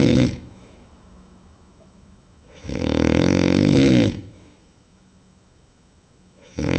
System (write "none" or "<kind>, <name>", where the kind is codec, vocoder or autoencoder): autoencoder, DAC-VAE